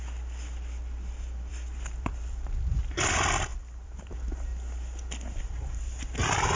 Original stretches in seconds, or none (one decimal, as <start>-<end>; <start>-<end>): 0.0-1.5; 2.2-3.5; 4.1-6.6